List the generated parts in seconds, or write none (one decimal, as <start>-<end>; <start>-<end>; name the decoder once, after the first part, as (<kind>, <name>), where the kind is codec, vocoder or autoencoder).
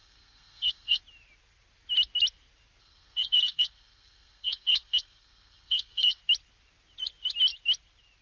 0.0-1.0 (codec, SNAC); 2.8-6.2